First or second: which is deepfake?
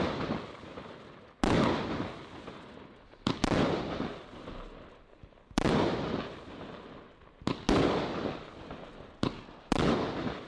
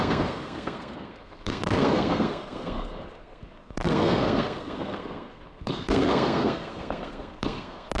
second